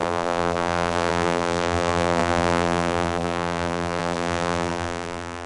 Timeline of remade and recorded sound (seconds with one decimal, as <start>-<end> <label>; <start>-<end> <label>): 0.0-5.5 remade